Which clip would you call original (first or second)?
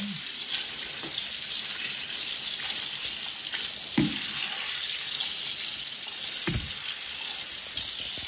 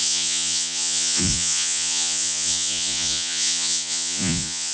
first